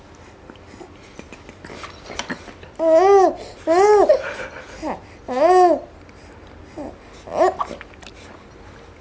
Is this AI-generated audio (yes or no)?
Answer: no